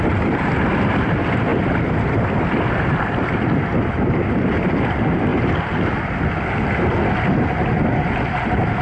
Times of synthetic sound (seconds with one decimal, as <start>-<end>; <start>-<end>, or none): none